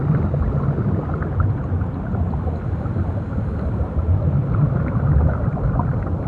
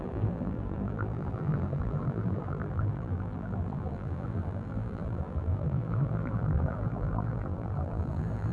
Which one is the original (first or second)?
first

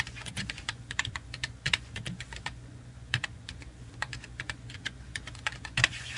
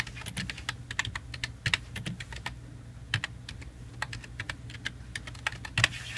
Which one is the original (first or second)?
second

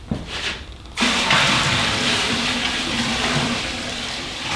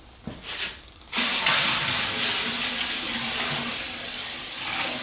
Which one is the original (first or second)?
second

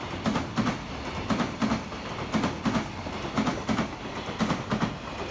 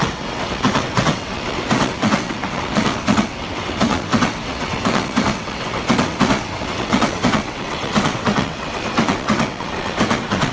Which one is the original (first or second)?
first